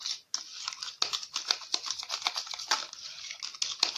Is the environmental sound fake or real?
real